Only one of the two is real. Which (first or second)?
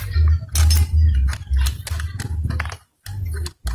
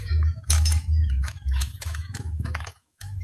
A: first